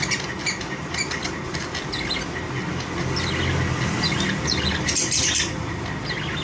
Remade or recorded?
recorded